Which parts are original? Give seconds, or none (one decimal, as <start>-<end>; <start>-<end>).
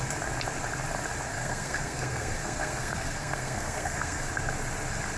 0.0-1.3; 4.3-5.2